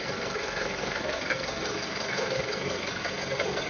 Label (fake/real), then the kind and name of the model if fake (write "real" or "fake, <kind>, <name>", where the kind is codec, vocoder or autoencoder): fake, codec, SNAC